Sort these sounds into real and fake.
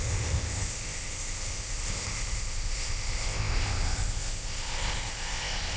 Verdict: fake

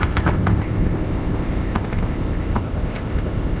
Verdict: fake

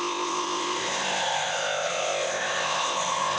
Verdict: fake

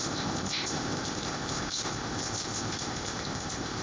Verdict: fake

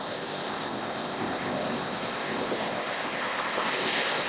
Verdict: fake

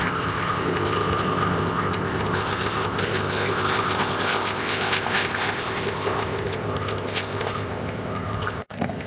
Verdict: fake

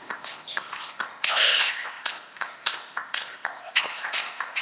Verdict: fake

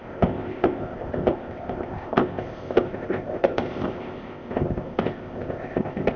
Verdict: fake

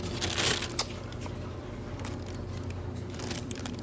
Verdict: real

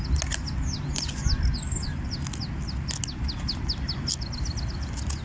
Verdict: real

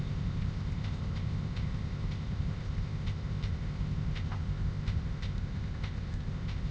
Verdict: fake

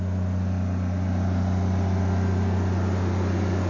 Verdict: real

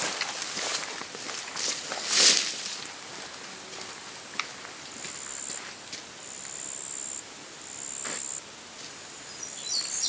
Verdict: real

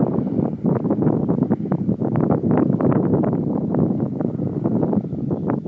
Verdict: real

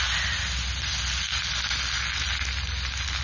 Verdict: real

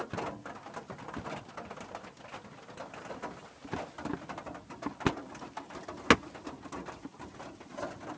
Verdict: real